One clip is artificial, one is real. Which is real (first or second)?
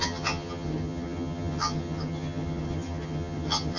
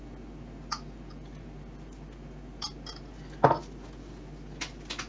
second